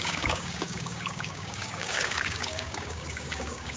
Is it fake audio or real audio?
fake